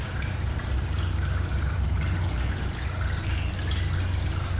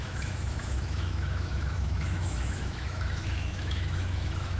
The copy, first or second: second